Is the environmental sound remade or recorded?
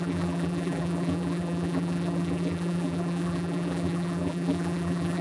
remade